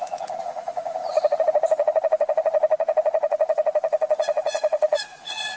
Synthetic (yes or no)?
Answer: yes